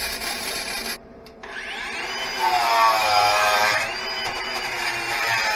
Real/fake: fake